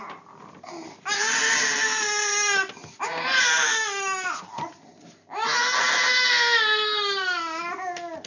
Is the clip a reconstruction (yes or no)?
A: no